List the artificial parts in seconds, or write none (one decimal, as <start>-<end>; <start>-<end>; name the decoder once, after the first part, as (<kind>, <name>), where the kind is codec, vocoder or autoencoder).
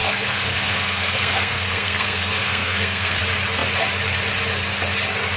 0.0-3.2 (codec, SNAC)